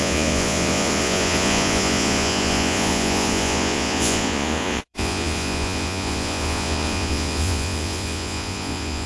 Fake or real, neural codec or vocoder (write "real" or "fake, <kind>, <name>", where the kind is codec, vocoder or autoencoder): fake, vocoder, Vocos